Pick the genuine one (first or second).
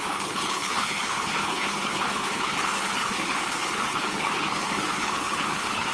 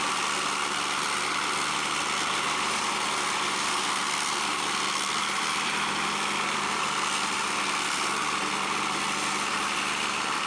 second